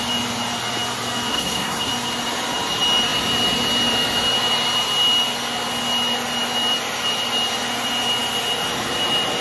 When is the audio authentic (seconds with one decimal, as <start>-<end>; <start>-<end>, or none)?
0.0-1.3; 1.9-9.4